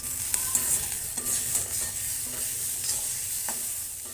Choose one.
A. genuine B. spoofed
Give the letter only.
A